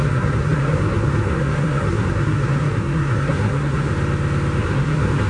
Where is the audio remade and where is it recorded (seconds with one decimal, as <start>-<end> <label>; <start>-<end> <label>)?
0.0-3.9 remade; 3.9-4.6 recorded; 4.6-5.3 remade